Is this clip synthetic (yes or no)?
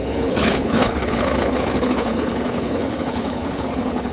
yes